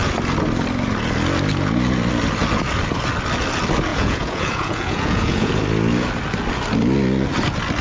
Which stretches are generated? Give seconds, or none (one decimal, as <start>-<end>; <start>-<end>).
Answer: 3.9-5.5